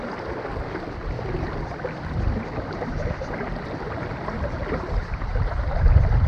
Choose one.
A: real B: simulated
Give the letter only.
A